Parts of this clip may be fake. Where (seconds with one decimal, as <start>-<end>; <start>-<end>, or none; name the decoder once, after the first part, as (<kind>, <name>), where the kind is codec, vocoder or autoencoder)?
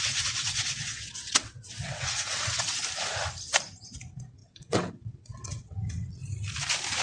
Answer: 0.0-2.8 (vocoder, WaveNeXt); 3.8-6.2